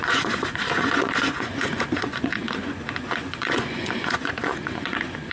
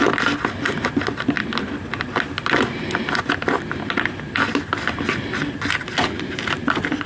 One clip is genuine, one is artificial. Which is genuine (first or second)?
second